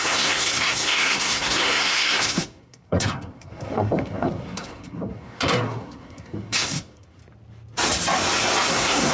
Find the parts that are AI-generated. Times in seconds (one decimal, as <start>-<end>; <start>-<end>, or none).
0.0-7.2; 8.7-9.1